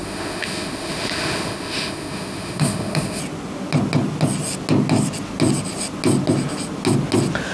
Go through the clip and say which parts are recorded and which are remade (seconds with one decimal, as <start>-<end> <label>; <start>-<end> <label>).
0.0-3.2 remade; 3.2-7.5 recorded